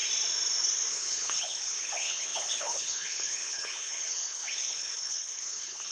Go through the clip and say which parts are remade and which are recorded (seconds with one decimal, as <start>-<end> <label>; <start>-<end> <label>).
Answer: 0.0-0.9 recorded; 0.9-5.9 remade